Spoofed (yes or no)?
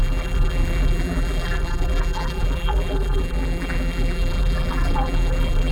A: yes